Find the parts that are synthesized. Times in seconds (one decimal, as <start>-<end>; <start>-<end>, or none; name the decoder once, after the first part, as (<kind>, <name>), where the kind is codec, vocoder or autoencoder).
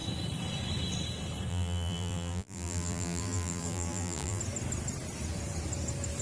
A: 1.5-4.4 (vocoder, BigVGAN v2)